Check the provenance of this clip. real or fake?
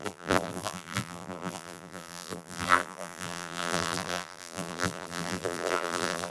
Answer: fake